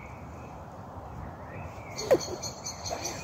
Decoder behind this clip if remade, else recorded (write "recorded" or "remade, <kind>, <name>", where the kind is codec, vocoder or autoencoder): remade, vocoder, BigVGAN v2